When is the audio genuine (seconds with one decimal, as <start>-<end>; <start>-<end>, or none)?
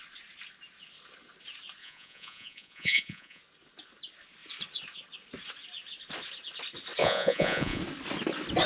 0.0-1.8; 3.4-7.0; 7.8-8.7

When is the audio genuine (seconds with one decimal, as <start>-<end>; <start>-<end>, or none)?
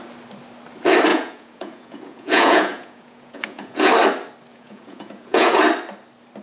0.0-1.1; 3.9-4.5; 5.6-6.4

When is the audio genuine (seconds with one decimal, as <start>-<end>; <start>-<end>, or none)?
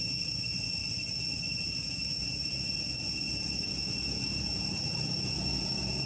0.8-1.5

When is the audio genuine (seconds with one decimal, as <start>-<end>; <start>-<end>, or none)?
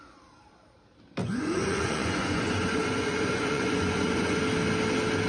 0.0-1.2; 4.4-5.3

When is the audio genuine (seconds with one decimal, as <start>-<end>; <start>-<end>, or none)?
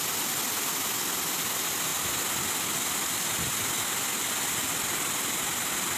0.0-6.0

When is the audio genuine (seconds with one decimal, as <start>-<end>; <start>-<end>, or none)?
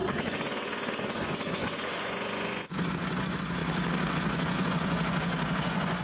3.6-4.1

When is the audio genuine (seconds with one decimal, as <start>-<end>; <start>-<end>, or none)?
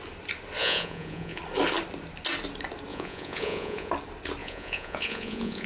0.0-0.6; 1.4-2.9; 3.9-4.4